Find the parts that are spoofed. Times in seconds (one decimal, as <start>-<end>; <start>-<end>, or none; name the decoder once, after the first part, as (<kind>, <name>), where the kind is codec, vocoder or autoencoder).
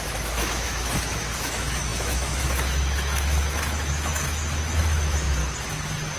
0.0-5.4 (autoencoder, DAC-VAE)